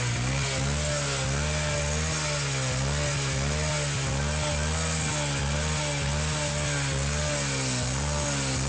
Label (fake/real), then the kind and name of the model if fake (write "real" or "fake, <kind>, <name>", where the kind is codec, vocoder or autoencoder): real